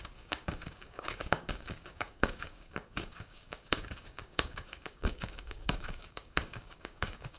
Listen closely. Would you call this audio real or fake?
fake